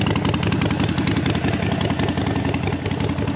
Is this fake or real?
real